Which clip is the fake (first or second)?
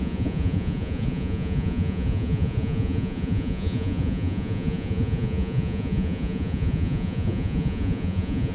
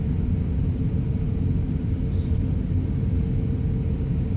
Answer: first